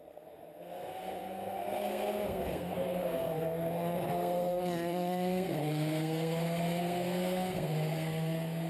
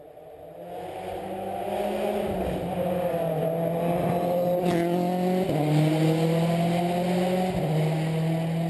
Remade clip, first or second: first